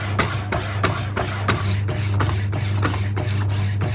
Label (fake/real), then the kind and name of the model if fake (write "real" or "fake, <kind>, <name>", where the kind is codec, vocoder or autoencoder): real